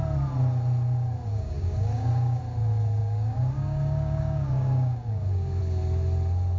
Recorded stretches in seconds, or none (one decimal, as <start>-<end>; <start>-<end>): 0.0-1.3; 2.4-3.0; 5.6-6.6